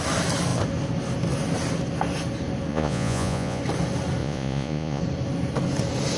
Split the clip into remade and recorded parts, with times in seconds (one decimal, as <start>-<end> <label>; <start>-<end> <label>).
0.0-2.7 recorded; 2.7-3.6 remade; 3.6-4.2 recorded; 4.2-5.0 remade; 5.0-6.2 recorded